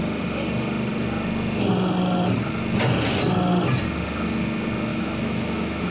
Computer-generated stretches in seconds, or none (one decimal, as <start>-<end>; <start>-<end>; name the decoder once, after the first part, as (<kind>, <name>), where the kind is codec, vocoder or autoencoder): 4.9-5.9 (autoencoder, DAC-VAE)